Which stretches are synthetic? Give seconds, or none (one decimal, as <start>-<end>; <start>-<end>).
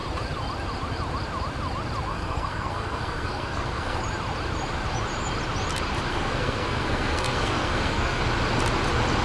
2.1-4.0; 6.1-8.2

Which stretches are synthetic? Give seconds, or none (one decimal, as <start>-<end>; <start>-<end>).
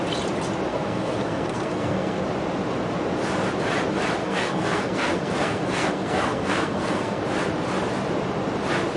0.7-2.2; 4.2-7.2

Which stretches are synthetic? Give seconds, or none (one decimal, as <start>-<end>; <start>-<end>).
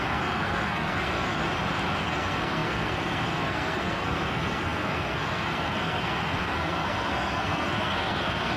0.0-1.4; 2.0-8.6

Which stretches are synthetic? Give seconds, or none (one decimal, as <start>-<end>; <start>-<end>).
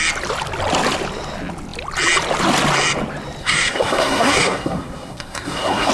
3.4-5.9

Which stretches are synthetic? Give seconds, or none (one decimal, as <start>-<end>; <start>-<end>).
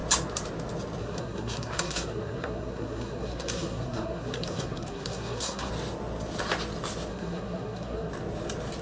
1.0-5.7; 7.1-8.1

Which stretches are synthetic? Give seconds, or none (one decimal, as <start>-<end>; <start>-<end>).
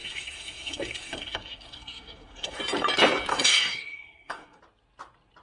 0.0-2.6; 3.3-4.6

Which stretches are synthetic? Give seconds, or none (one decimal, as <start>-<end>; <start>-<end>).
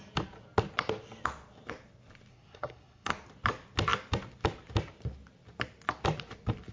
2.3-3.1